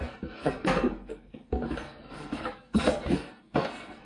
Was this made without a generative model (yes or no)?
no